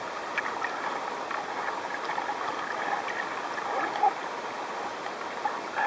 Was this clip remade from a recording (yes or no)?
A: no